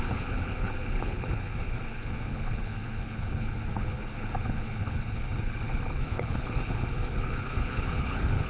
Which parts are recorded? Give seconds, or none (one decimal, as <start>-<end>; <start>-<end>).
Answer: none